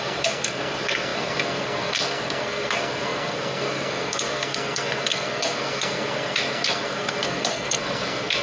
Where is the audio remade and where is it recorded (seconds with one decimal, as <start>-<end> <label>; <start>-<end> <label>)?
0.0-8.4 remade